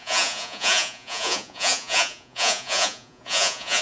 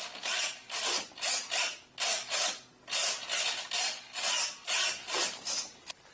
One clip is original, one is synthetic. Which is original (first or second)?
second